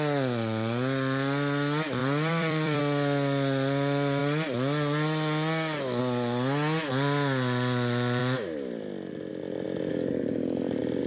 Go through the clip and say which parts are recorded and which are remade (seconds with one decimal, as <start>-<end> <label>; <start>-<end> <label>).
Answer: 0.0-2.0 recorded; 2.0-2.8 remade; 2.8-11.1 recorded